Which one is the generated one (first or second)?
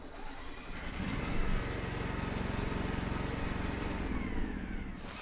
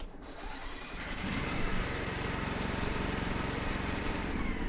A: second